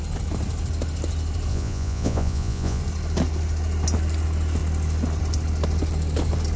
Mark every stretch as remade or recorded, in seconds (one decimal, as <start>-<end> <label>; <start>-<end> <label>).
0.0-1.5 recorded; 1.5-2.8 remade; 2.8-6.6 recorded